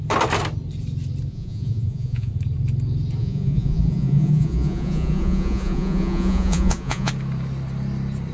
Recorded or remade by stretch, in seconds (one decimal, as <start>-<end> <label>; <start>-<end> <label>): 0.0-1.3 recorded; 1.3-2.3 remade; 2.3-3.2 recorded; 3.2-7.1 remade; 7.1-8.3 recorded